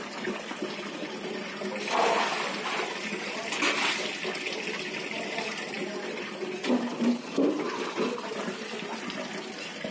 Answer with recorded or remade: recorded